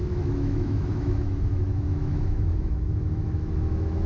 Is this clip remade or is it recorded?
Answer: remade